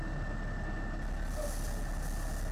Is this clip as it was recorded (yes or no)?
yes